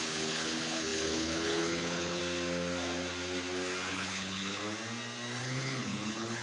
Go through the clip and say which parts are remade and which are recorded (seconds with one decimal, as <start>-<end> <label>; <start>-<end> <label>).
0.0-2.2 remade; 2.2-3.9 recorded; 3.9-4.6 remade; 4.6-5.4 recorded; 5.4-6.4 remade